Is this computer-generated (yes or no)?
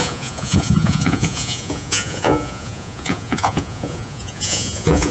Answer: yes